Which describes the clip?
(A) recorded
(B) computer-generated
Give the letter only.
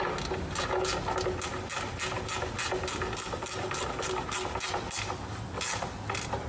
A